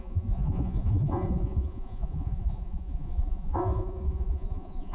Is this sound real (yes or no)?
no